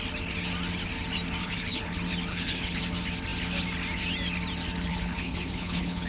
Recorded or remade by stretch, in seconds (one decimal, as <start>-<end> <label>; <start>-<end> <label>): 0.0-1.4 recorded; 1.4-1.9 remade; 1.9-2.3 recorded; 2.3-2.8 remade; 2.8-4.9 recorded; 4.9-6.1 remade